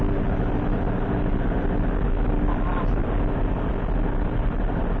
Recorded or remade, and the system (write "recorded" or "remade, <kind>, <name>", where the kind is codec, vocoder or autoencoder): recorded